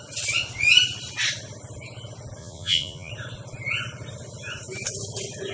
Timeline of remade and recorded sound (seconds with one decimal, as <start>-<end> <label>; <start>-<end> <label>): 0.0-2.4 recorded; 2.4-3.1 remade; 3.1-5.5 recorded